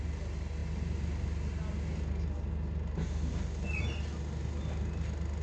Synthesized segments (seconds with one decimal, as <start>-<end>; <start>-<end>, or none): none